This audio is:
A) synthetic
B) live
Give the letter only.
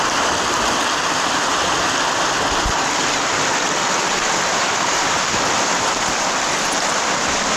B